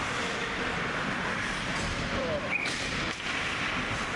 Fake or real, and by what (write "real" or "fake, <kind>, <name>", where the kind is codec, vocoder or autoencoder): fake, vocoder, BigVGAN v2